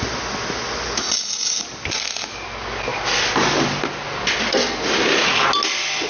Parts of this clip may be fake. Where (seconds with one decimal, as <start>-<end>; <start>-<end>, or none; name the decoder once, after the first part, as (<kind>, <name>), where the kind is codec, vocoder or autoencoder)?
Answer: none